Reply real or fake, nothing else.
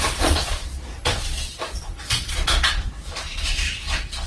fake